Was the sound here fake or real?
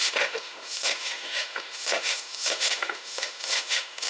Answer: fake